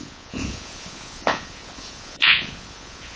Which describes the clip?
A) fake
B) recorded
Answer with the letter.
A